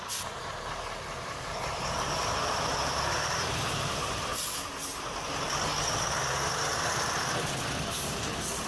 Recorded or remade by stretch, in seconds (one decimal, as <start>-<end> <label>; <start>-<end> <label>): 0.0-4.3 remade; 4.3-8.7 recorded